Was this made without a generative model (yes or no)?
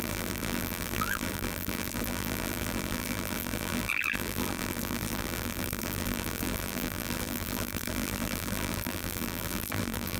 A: no